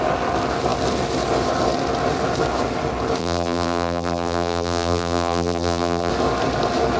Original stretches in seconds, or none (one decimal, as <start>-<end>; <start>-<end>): 0.0-3.2; 6.1-7.0